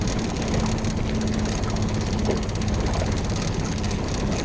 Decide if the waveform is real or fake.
real